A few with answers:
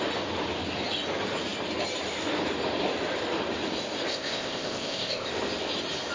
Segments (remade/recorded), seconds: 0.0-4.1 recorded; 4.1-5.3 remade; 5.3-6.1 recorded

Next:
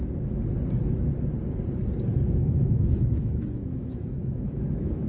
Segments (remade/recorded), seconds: 0.0-2.2 recorded; 2.2-5.1 remade

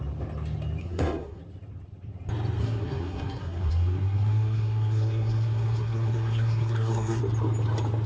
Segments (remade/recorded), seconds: 0.0-0.8 recorded; 0.8-1.4 remade; 1.4-2.6 recorded; 2.6-7.2 remade; 7.2-8.1 recorded